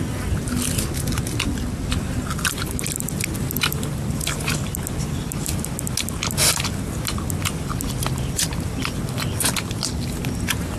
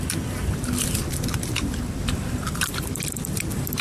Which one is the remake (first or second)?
second